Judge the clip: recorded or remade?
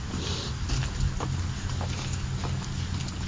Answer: recorded